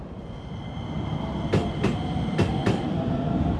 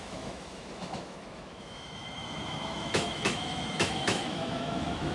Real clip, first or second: first